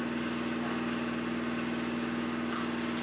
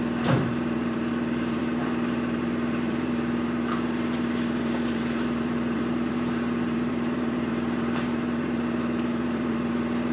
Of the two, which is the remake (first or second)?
second